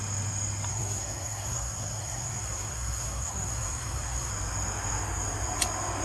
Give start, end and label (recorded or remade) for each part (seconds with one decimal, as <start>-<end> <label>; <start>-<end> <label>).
0.0-0.7 recorded; 0.7-4.3 remade; 4.3-6.0 recorded